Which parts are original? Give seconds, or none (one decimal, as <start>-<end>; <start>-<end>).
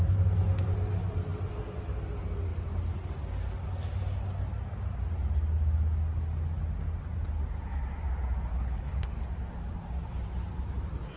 0.0-8.5; 9.2-11.2